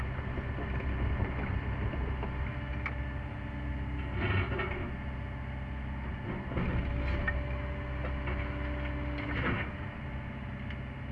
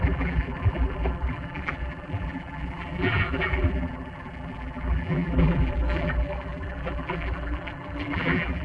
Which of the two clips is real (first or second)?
first